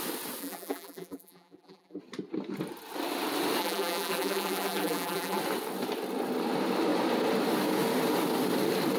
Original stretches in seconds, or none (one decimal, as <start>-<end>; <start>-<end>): 0.0-0.4; 2.0-3.6; 5.4-9.0